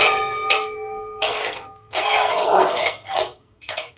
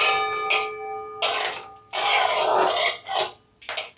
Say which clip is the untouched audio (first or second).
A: second